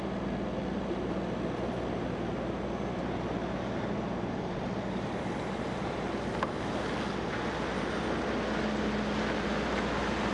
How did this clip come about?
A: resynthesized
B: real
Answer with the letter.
B